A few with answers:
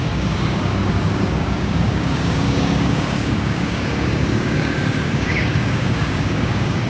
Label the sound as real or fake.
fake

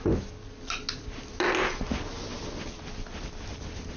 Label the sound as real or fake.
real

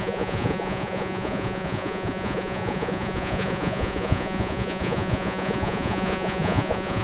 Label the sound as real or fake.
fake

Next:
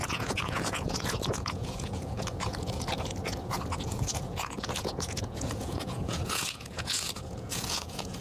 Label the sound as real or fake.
fake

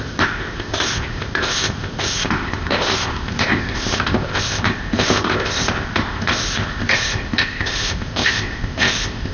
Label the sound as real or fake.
fake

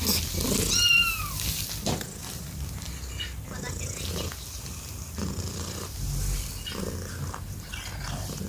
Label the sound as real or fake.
real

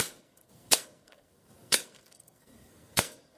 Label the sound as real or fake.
fake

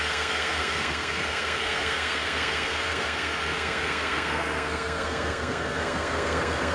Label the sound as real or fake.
fake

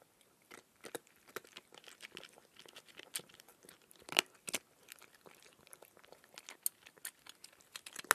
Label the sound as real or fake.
real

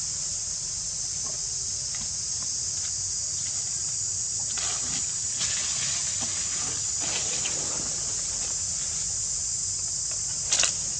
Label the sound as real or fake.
real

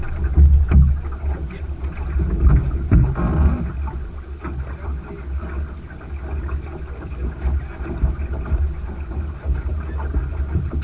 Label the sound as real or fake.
real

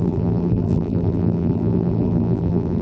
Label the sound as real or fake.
fake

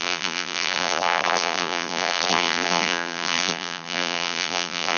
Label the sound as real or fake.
fake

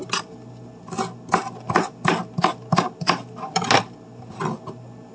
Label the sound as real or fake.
real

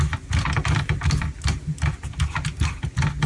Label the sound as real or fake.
real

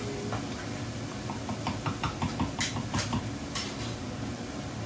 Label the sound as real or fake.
real